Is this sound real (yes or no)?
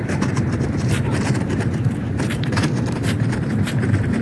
no